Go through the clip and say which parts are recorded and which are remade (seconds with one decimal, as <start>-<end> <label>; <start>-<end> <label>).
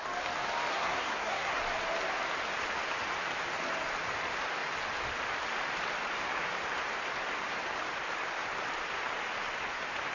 0.0-0.7 recorded; 0.7-1.6 remade; 1.6-10.1 recorded